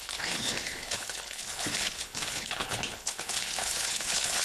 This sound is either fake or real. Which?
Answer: fake